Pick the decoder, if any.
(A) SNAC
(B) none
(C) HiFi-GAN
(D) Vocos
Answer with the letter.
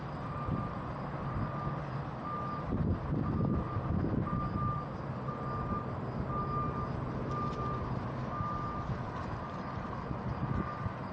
B